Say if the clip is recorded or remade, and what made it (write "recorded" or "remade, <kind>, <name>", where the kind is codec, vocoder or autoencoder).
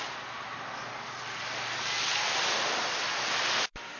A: recorded